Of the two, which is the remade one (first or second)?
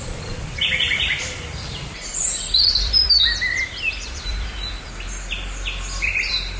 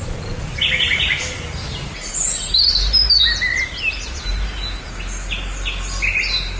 first